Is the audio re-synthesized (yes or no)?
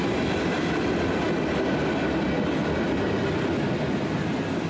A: no